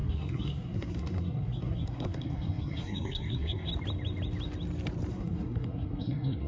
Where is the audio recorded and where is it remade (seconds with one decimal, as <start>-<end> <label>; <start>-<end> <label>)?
0.0-3.7 remade; 3.7-5.1 recorded; 5.1-6.5 remade